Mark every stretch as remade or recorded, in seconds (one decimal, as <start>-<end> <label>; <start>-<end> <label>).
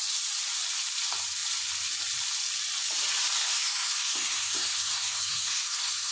0.0-3.4 recorded; 3.4-6.1 remade